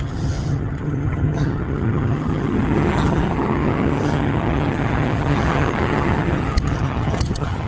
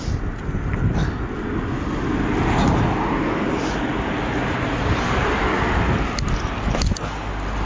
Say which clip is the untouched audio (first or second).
second